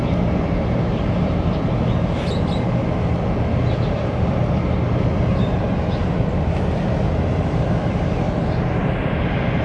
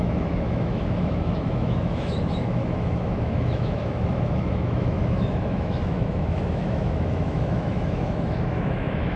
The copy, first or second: second